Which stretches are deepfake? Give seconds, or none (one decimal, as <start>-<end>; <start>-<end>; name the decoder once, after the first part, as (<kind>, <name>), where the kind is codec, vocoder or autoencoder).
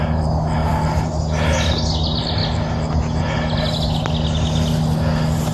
none